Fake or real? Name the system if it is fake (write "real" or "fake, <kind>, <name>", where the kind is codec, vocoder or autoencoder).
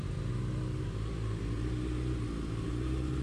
real